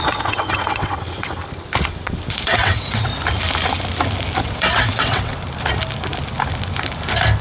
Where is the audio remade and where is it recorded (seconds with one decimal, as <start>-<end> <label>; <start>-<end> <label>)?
0.0-1.4 remade; 1.4-2.3 recorded; 2.3-3.1 remade; 3.1-4.4 recorded; 4.4-5.3 remade; 5.3-7.4 recorded